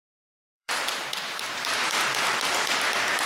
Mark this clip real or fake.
fake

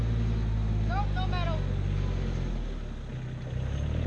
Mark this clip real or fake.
real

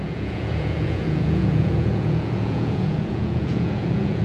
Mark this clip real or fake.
fake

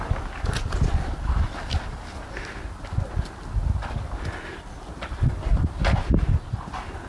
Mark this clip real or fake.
real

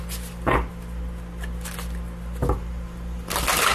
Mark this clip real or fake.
real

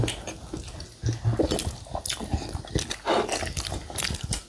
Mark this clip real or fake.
real